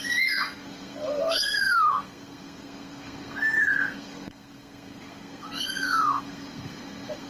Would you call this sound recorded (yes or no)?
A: no